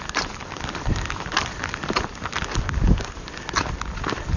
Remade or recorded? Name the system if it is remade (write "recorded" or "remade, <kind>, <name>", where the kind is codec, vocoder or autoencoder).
recorded